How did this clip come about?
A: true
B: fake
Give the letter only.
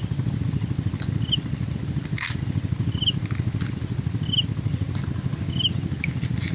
A